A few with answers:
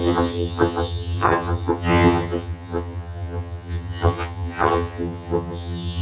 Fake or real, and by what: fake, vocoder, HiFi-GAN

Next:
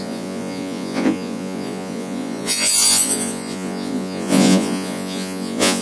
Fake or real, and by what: fake, vocoder, Vocos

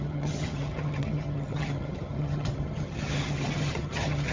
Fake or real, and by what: fake, vocoder, HiFi-GAN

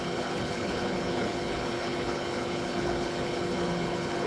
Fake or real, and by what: fake, codec, HILCodec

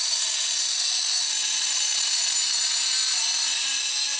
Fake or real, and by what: real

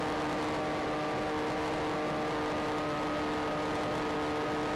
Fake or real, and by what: real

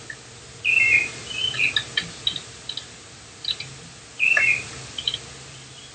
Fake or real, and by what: real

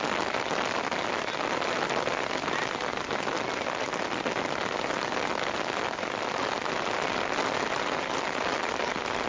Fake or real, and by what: real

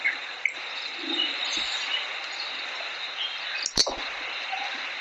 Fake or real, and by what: real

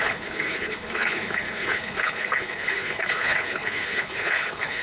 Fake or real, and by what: fake, codec, HILCodec